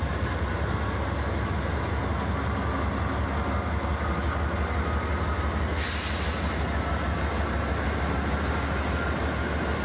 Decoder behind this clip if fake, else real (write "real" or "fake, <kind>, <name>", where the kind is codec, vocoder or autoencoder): real